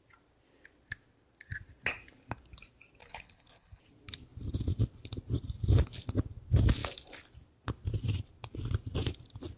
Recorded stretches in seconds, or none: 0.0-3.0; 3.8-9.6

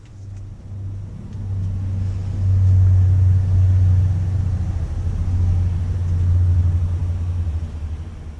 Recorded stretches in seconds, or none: 0.0-8.4

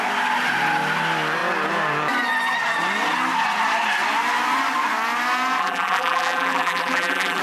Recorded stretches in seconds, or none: 0.0-5.6

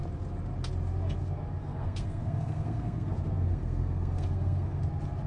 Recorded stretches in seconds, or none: 0.0-1.6; 4.8-5.3

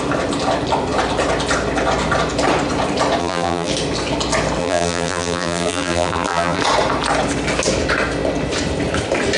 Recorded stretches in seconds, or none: 0.0-3.2; 3.7-4.6; 6.6-9.4

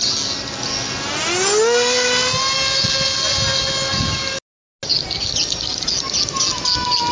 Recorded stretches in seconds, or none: 0.0-7.1

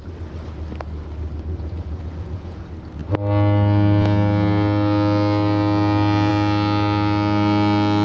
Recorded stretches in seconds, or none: 0.0-1.5; 2.6-8.0